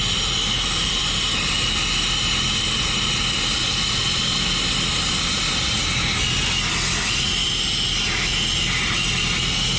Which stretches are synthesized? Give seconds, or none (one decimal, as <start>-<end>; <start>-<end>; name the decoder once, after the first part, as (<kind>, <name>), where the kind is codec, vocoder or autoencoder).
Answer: none